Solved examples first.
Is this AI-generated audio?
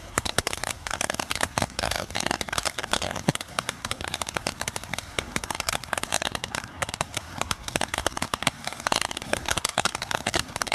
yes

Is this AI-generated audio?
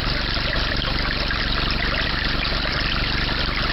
no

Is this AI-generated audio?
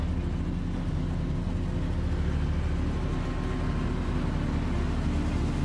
no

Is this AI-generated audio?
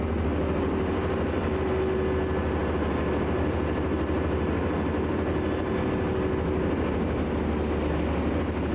no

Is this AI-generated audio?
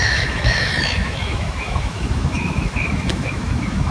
yes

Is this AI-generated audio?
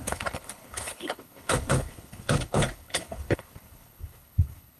yes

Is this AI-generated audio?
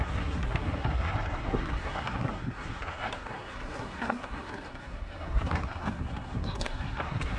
yes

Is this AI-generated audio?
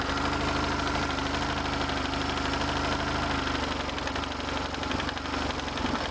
no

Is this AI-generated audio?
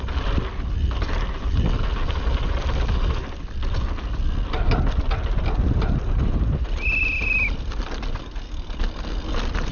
no